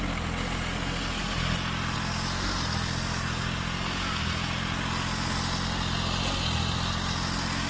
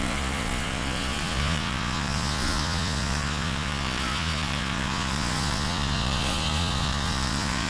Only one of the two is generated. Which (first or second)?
second